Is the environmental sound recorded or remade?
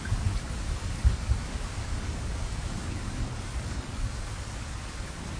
remade